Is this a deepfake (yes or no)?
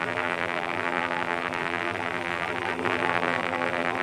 yes